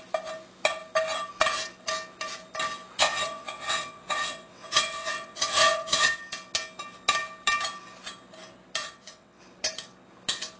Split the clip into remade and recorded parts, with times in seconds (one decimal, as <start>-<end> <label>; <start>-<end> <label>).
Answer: 0.0-3.0 recorded; 3.0-6.1 remade; 6.1-8.8 recorded; 8.8-9.4 remade; 9.4-10.6 recorded